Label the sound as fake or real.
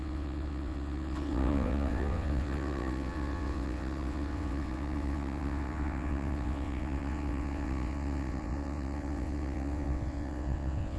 fake